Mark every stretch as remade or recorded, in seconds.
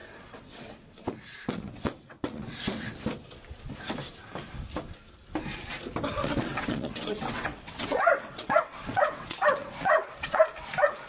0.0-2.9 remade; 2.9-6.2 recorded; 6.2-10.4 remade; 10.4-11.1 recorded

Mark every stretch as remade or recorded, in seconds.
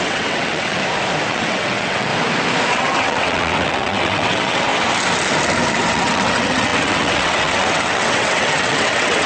0.0-0.8 remade; 0.8-1.3 recorded; 1.3-2.1 remade; 2.1-2.7 recorded; 2.7-4.7 remade; 4.7-5.7 recorded; 5.7-9.3 remade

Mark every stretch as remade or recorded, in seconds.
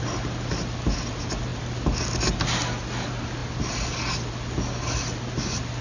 0.0-5.8 recorded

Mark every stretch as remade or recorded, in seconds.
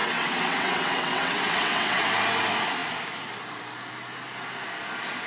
0.0-2.1 remade; 2.1-5.3 recorded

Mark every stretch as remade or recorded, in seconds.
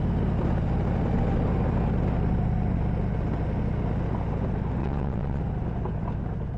0.0-4.8 recorded; 4.8-5.4 remade; 5.4-6.6 recorded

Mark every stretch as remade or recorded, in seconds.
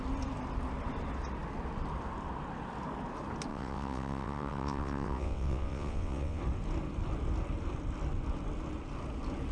0.0-3.5 recorded; 3.5-6.4 remade; 6.4-9.5 recorded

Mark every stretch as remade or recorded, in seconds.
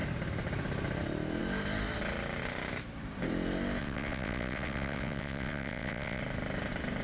0.0-3.8 recorded; 3.8-6.2 remade; 6.2-7.0 recorded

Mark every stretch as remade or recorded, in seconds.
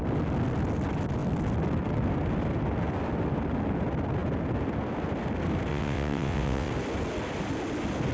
0.0-5.7 recorded; 5.7-6.7 remade; 6.7-8.1 recorded